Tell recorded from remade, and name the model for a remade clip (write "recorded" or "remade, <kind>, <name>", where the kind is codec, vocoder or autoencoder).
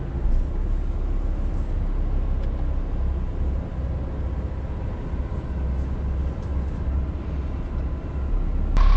recorded